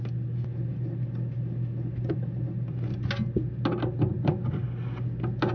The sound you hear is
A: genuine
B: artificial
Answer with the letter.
A